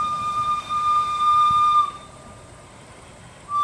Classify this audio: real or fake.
fake